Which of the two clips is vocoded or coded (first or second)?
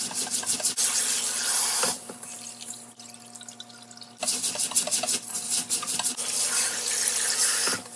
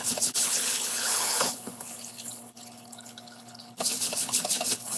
second